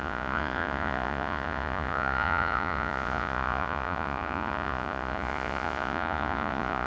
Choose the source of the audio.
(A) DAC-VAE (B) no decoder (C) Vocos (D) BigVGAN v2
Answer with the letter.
C